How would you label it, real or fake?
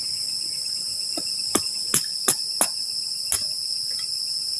real